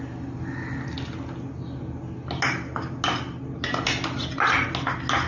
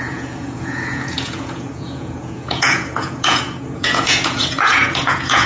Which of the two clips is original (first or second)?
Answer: first